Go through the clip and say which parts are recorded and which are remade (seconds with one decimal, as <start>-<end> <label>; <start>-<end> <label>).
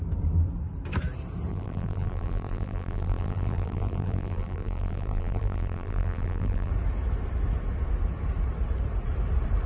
0.0-1.5 recorded; 1.5-6.7 remade; 6.7-9.7 recorded